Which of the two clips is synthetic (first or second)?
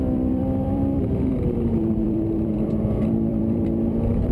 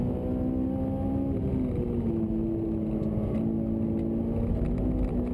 first